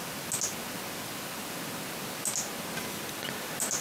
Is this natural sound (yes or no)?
yes